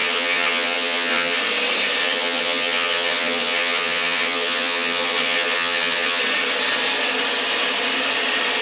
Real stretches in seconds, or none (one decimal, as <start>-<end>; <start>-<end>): 1.4-2.0; 6.2-8.6